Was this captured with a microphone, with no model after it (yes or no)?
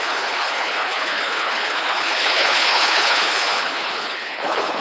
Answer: no